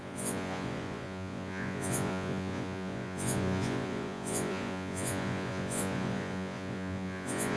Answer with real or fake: fake